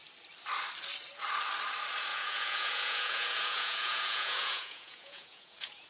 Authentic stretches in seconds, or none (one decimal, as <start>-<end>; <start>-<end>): 0.0-2.1